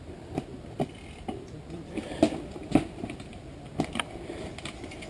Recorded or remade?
recorded